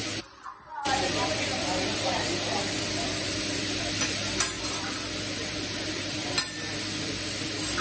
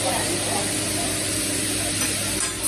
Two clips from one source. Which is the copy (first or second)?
first